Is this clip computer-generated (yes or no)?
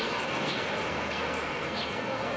yes